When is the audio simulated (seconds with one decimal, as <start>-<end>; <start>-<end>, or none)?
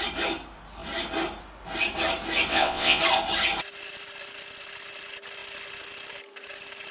2.5-3.0